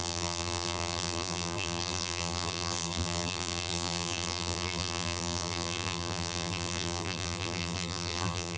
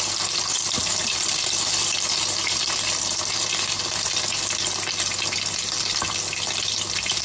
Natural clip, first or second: second